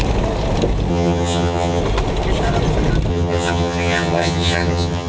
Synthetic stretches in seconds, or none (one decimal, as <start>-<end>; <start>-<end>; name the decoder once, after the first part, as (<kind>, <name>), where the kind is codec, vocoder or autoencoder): 0.9-1.8 (vocoder, HiFi-GAN); 3.1-5.1